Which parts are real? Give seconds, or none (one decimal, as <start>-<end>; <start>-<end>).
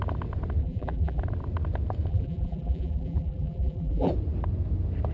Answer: 0.0-0.6; 1.2-2.1; 4.1-5.1